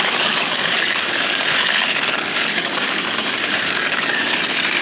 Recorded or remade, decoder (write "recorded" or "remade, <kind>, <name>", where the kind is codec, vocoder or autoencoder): remade, codec, DAC